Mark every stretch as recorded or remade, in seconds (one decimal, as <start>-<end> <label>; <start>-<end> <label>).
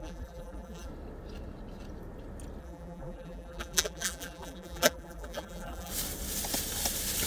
0.0-0.9 remade; 0.9-2.6 recorded; 2.6-5.9 remade; 5.9-7.3 recorded